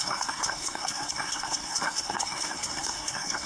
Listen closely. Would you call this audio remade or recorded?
remade